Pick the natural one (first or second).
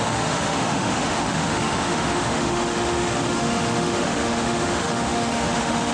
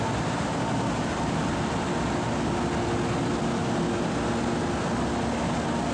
second